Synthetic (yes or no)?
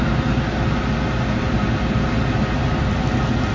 no